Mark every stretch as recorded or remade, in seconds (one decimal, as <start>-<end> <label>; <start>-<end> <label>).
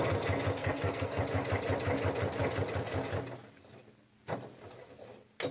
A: 0.0-0.6 recorded; 0.6-1.2 remade; 1.2-5.5 recorded